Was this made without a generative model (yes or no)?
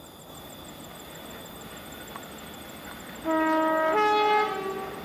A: yes